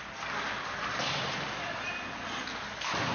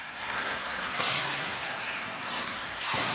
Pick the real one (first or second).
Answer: first